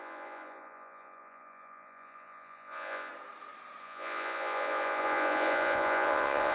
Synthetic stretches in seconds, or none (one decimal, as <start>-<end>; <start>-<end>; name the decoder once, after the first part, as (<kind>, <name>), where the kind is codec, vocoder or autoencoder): 0.0-3.1 (vocoder, Vocos); 3.8-6.5